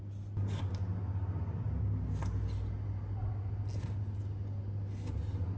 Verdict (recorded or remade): recorded